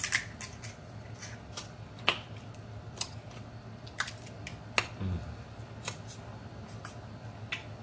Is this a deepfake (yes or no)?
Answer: no